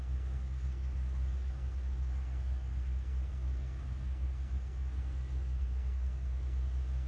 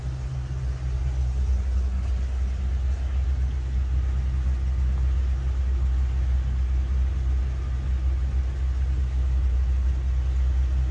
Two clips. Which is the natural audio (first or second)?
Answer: second